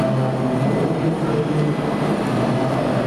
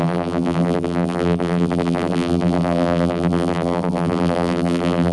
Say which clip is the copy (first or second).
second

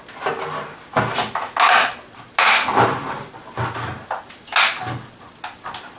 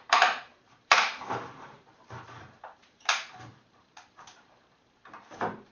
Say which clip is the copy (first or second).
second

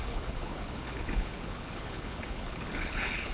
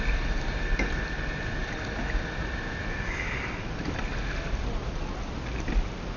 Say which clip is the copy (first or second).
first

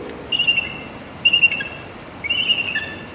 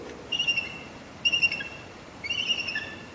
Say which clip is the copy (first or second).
second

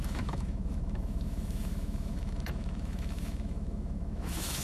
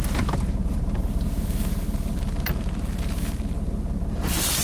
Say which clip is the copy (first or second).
first